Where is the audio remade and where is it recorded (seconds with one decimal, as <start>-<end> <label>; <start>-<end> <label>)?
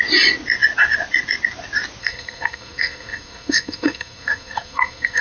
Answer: 0.0-2.0 recorded; 2.0-5.2 remade